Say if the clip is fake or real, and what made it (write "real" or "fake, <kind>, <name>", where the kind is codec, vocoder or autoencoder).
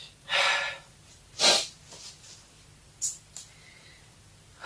real